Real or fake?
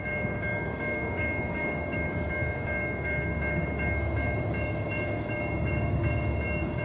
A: fake